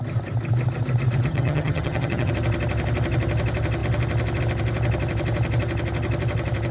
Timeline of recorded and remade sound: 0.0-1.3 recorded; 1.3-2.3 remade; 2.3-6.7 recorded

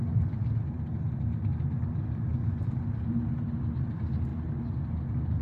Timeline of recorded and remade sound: 0.0-5.4 recorded

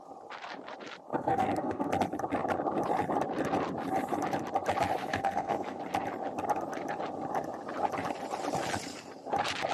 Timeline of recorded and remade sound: 0.0-1.1 recorded; 1.1-1.9 remade; 1.9-5.0 recorded; 5.0-5.8 remade; 5.8-9.7 recorded